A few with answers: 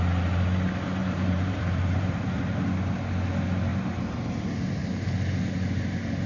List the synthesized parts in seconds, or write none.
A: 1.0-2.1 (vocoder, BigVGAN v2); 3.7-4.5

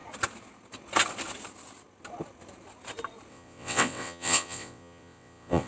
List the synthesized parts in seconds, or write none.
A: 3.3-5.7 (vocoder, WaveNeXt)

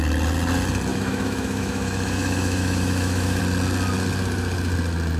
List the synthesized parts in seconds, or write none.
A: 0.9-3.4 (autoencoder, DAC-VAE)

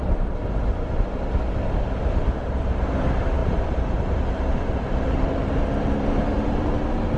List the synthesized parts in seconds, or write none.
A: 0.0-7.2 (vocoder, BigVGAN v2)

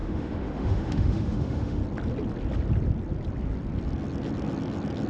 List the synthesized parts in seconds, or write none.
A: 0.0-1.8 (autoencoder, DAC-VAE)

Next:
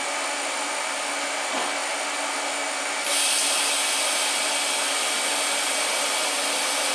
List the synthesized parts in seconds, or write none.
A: none

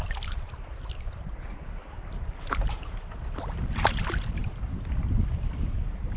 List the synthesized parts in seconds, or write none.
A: none

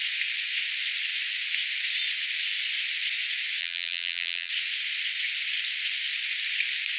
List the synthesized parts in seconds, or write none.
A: 3.6-4.5 (vocoder, BigVGAN v2)